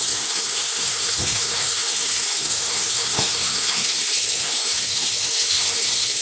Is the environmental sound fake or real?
fake